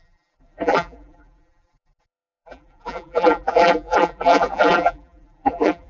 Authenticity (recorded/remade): remade